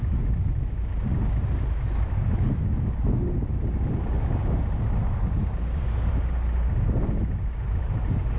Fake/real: real